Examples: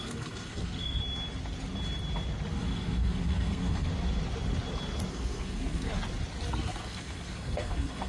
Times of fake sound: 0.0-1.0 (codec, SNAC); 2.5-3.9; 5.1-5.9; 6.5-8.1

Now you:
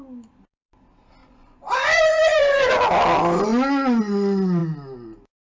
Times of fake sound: 1.2-2.7 (vocoder, Vocos)